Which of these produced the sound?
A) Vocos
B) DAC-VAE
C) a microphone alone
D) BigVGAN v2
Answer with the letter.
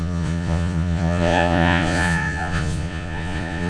A